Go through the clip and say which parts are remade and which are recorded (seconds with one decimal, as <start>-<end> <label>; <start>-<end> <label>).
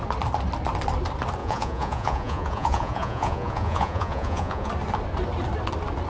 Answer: 0.0-1.4 recorded; 1.4-4.7 remade; 4.7-6.1 recorded